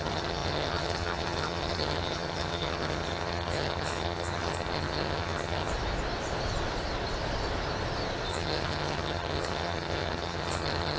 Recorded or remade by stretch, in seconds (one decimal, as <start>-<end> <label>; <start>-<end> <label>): 0.0-5.7 remade; 5.7-8.3 recorded; 8.3-11.0 remade